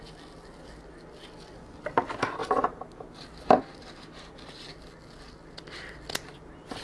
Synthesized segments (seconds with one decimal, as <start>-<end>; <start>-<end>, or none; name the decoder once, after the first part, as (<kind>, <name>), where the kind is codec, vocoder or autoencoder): none